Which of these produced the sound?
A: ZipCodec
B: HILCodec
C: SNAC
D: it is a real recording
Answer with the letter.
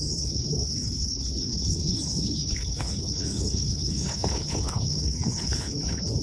B